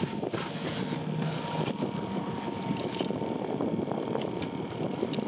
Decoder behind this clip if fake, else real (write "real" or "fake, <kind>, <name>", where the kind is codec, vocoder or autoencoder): real